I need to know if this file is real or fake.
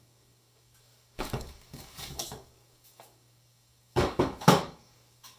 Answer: fake